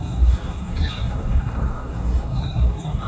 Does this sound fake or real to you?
fake